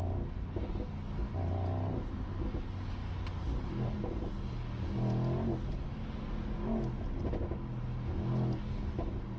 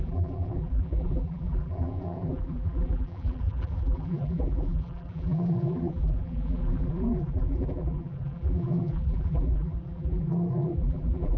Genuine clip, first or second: first